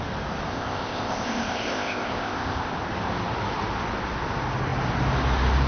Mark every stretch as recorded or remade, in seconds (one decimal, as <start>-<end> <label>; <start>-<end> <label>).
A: 0.0-0.5 recorded; 0.5-2.7 remade; 2.7-5.7 recorded